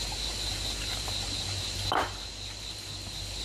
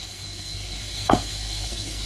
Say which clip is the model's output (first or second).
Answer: second